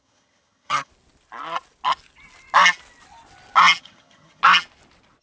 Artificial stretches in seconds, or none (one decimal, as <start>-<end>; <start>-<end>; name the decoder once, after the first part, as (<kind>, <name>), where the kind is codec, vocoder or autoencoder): 0.0-0.9 (vocoder, HiFi-GAN); 3.8-4.4